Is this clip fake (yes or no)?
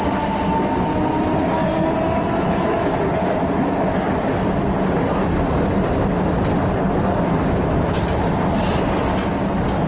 no